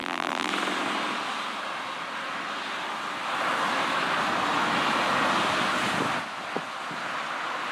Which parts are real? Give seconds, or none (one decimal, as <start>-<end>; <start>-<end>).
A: 0.5-7.7